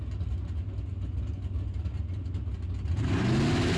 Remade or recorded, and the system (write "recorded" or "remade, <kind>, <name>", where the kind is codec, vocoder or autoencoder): recorded